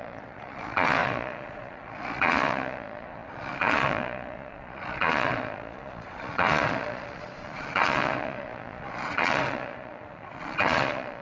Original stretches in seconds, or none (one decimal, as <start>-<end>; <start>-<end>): none